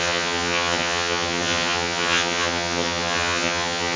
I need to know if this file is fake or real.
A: fake